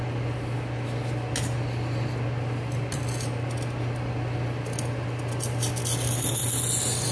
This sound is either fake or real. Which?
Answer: real